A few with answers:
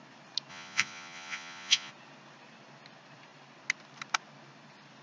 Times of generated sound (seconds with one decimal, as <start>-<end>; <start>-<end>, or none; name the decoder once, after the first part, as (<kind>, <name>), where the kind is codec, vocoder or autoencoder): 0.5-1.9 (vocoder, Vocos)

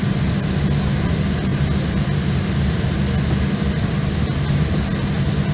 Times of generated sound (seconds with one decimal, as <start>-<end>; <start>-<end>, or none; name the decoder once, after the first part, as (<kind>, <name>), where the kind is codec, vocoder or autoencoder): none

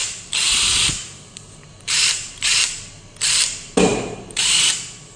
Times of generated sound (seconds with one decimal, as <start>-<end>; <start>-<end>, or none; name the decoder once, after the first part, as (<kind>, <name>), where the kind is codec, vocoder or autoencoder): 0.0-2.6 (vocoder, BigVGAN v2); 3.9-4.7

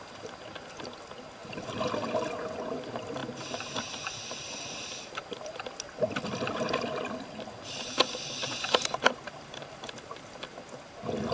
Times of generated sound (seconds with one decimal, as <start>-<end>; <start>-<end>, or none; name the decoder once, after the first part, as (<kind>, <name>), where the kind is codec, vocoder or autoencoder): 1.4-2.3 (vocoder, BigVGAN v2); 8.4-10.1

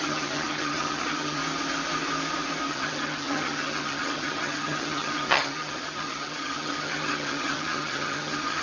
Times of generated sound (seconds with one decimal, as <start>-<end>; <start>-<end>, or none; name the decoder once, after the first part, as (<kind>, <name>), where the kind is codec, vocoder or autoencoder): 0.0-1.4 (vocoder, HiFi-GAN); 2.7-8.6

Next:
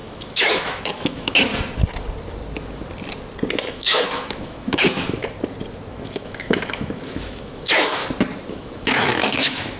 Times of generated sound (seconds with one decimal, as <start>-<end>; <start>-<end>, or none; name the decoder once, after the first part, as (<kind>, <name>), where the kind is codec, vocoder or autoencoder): 0.0-1.5 (autoencoder, DAC-VAE); 3.7-5.2; 5.9-8.0; 8.5-9.8